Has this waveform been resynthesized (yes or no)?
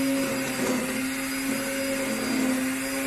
no